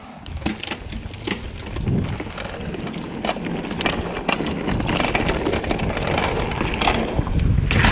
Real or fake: real